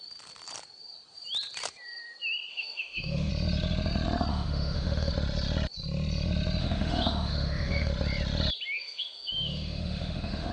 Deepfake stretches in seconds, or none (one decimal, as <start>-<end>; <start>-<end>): 2.5-3.3; 4.3-5.1; 6.6-7.9; 8.8-10.5